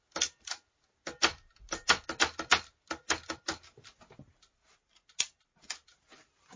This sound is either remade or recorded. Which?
recorded